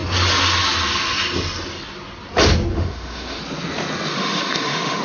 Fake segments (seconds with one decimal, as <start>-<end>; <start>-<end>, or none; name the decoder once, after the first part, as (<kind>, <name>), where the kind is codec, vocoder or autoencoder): 2.7-3.4 (autoencoder, DAC-VAE); 4.1-5.0